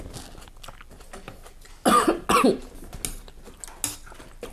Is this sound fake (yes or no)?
no